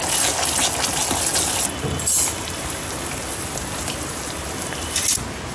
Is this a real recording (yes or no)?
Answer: yes